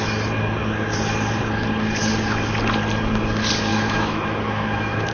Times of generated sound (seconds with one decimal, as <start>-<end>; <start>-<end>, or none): 3.7-5.1